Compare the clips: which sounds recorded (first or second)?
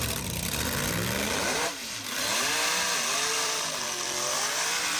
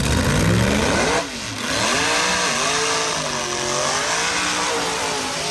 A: second